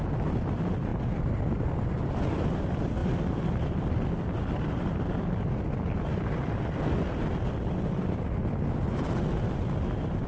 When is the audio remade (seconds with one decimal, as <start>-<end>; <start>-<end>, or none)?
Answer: none

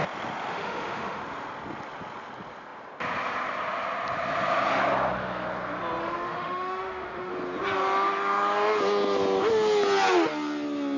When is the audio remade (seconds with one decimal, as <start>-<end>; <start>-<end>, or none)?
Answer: 0.5-1.2; 6.0-7.3

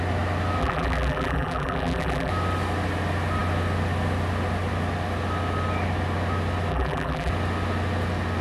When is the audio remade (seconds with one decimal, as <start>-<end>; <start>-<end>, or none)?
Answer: 0.6-2.3; 6.7-7.3

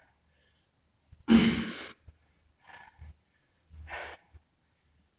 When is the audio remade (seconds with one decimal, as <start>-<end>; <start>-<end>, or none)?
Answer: none

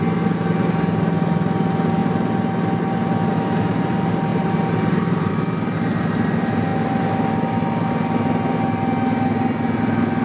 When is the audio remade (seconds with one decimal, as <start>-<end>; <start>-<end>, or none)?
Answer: 4.3-5.3

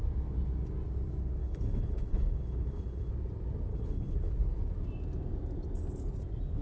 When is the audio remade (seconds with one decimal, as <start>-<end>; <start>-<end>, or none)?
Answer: 1.4-3.1; 3.7-4.3

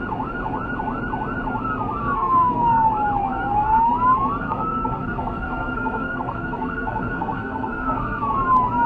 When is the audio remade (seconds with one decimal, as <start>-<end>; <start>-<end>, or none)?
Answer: 2.0-2.9; 3.3-3.9; 4.4-8.3

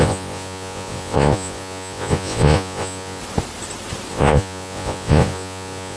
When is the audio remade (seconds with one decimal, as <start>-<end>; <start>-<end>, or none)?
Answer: 0.0-3.2; 4.1-6.0